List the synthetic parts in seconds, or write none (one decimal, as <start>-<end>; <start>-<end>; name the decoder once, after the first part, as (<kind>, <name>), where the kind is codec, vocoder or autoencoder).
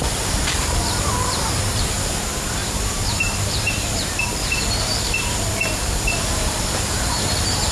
0.0-7.7 (vocoder, BigVGAN v2)